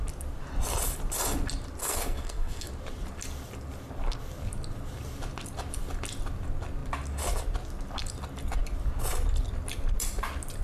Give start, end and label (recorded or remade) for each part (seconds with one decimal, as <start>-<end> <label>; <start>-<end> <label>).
0.0-1.8 recorded; 1.8-2.7 remade; 2.7-10.6 recorded